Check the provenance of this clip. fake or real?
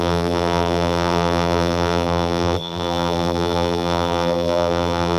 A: fake